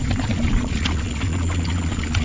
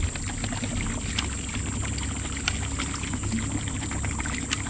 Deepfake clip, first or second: first